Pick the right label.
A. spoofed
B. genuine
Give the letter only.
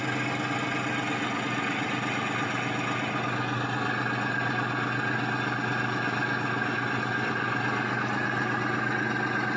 B